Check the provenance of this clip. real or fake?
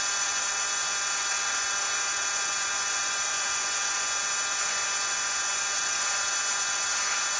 fake